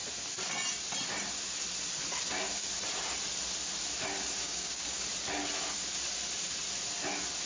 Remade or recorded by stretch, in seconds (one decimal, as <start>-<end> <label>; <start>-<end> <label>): 0.0-4.4 recorded; 4.4-5.0 remade; 5.0-7.5 recorded